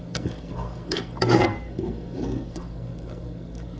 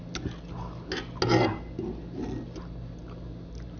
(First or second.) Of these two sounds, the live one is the second